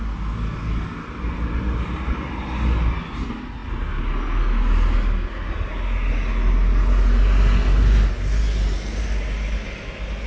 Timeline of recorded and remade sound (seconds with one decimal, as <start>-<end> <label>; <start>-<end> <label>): 0.0-10.3 recorded